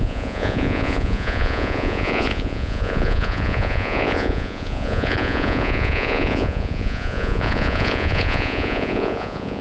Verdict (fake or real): fake